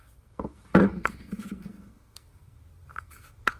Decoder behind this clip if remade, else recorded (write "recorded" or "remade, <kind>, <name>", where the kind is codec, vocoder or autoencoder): remade, codec, SNAC